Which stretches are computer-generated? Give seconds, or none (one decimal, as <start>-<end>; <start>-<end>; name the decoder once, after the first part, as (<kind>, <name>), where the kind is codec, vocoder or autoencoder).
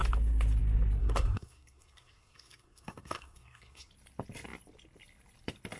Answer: 1.0-3.9 (codec, SNAC)